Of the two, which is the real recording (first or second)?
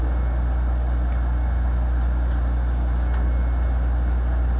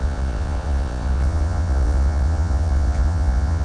first